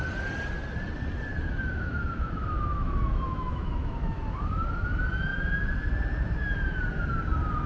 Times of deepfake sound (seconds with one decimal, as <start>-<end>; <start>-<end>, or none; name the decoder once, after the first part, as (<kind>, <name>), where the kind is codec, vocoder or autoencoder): 1.7-4.2 (autoencoder, DAC-VAE)